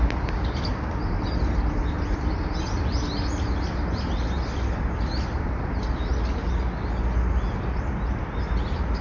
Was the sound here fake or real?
real